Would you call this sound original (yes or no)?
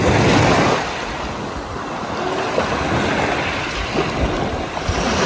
yes